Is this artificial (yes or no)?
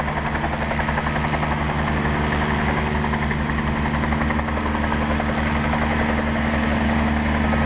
no